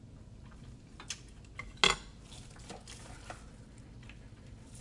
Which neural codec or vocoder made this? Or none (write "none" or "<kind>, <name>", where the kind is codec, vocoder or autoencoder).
none